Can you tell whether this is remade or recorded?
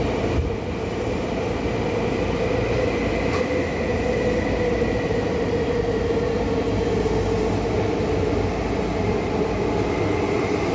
recorded